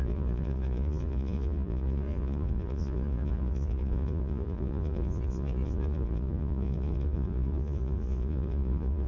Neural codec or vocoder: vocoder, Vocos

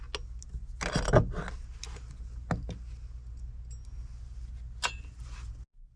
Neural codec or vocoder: none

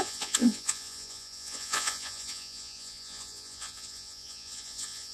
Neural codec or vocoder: vocoder, Vocos